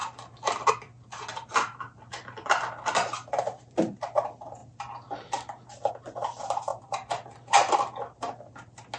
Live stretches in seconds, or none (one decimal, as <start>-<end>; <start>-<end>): 0.0-9.0